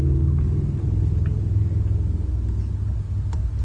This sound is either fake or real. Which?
real